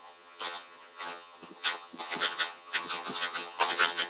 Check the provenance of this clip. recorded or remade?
remade